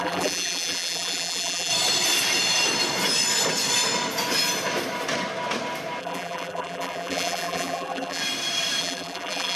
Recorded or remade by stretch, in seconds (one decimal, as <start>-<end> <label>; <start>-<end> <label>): 0.0-1.7 remade; 1.7-6.0 recorded; 6.0-8.2 remade; 8.2-8.8 recorded; 8.8-9.6 remade